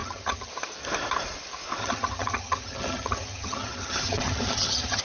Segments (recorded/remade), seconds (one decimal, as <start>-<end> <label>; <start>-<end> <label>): 0.0-0.5 remade; 0.5-1.8 recorded; 1.8-5.0 remade